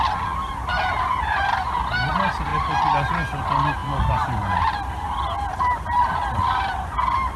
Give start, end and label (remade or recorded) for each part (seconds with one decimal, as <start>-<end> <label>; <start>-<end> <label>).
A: 0.0-7.4 recorded